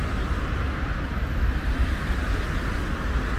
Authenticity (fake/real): real